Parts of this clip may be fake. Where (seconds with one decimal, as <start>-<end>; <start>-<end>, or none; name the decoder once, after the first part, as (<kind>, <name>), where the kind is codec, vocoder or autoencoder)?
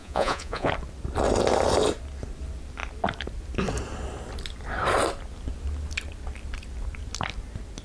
0.0-0.7 (vocoder, Vocos)